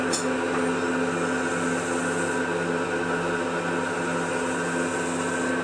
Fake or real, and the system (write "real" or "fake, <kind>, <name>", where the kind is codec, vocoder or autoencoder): real